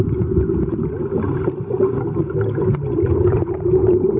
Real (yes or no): yes